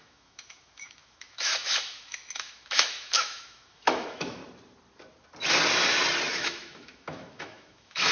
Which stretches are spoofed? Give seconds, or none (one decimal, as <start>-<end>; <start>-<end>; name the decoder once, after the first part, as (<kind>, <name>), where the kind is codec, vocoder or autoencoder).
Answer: 0.0-4.4 (autoencoder, DAC-VAE); 6.3-8.1